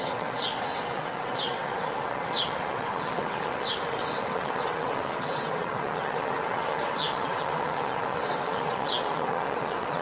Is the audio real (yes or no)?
no